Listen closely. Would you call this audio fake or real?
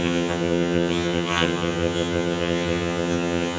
fake